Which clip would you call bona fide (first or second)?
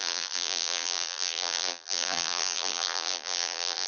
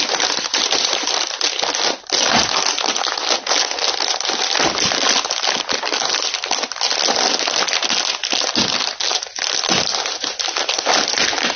second